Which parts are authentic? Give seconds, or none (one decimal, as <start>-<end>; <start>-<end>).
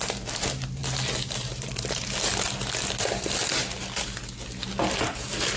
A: 0.0-5.6